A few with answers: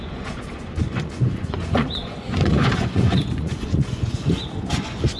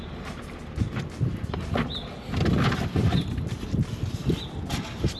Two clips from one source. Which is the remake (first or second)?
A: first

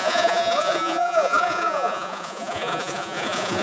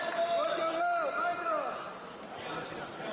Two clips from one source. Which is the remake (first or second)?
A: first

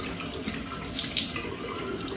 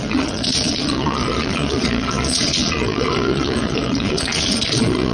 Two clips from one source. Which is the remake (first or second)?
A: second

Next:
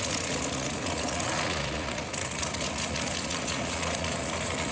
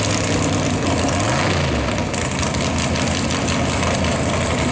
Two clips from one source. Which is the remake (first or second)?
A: first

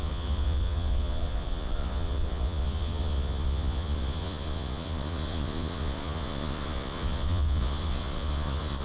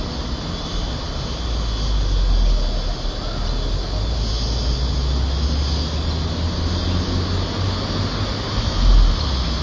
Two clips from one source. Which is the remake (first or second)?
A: first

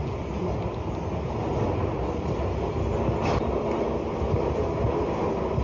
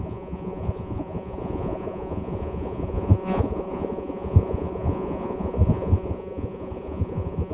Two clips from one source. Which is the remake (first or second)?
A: second